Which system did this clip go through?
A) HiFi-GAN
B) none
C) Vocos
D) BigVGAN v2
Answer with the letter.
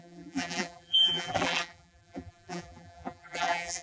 D